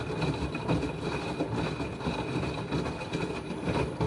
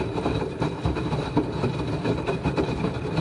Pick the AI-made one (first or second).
second